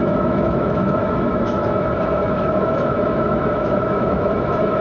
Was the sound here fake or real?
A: fake